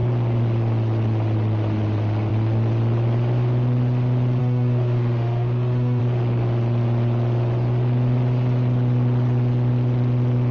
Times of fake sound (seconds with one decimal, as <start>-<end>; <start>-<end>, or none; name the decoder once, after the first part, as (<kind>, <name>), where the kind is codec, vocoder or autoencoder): 4.4-6.0 (autoencoder, DAC-VAE)